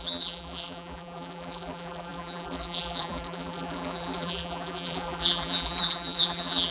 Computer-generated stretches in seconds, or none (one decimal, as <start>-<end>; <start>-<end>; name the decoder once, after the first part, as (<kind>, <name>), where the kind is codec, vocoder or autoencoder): 0.0-6.7 (vocoder, BigVGAN v2)